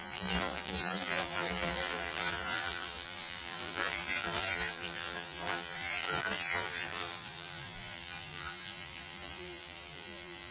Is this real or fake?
fake